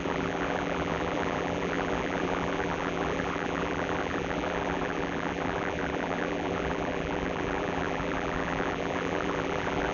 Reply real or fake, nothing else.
fake